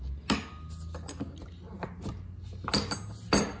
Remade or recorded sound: recorded